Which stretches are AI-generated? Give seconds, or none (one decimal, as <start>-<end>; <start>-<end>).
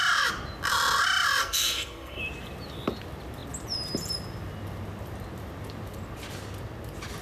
1.4-2.2